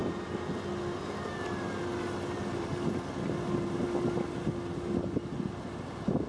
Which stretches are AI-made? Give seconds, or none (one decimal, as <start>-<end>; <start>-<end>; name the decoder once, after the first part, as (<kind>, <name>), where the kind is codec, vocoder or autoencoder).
none